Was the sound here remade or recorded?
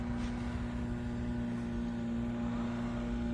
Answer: recorded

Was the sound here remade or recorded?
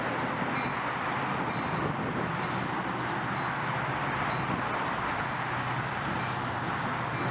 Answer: recorded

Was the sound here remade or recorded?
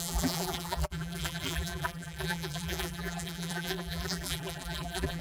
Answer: remade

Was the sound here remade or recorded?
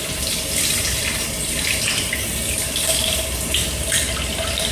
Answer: recorded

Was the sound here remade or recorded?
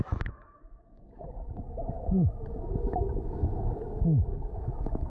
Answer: remade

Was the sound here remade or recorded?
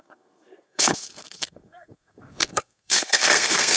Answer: remade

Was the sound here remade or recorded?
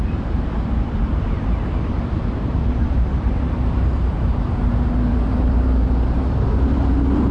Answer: remade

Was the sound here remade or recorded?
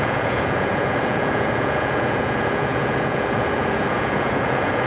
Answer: remade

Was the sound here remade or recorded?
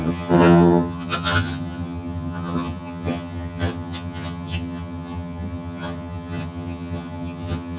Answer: remade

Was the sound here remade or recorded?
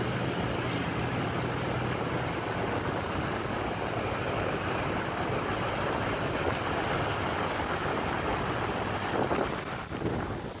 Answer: recorded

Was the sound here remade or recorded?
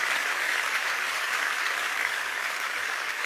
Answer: remade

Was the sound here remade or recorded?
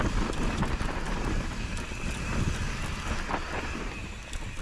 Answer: recorded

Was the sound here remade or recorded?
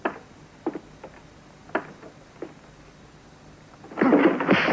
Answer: recorded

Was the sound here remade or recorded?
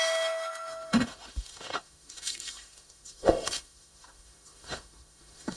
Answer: remade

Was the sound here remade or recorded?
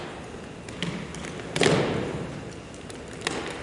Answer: recorded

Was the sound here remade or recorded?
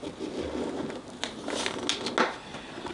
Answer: recorded